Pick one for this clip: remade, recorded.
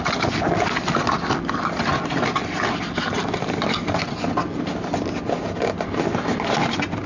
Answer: recorded